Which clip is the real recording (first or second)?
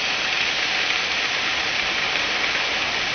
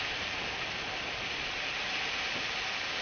second